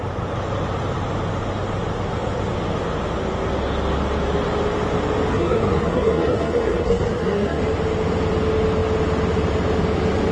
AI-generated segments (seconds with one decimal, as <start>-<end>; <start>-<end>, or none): 5.3-7.6

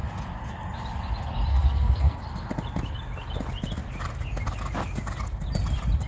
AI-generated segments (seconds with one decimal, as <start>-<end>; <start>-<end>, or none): 1.5-2.2

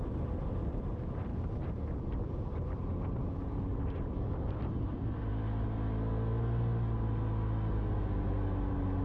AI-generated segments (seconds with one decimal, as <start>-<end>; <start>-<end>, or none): 3.5-5.3

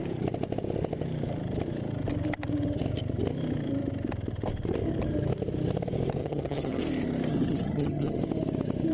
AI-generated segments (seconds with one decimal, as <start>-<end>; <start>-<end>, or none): 6.2-6.8; 7.3-8.2